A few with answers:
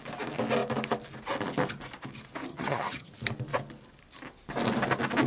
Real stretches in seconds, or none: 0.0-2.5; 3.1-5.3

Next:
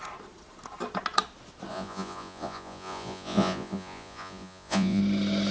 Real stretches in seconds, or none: 0.0-1.7; 5.0-5.5

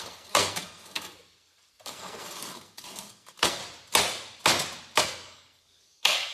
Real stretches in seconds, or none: 3.6-5.0

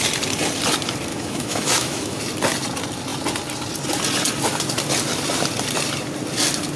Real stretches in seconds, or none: 0.0-1.1; 2.2-6.8

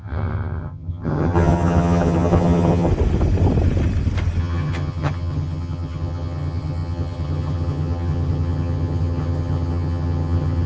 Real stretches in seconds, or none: 2.9-4.4